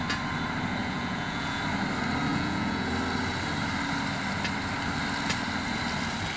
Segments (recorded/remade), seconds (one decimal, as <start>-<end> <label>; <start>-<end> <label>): 0.0-0.8 recorded; 0.8-1.6 remade; 1.6-2.3 recorded; 2.3-2.9 remade; 2.9-6.4 recorded